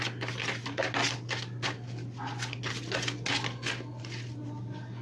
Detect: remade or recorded recorded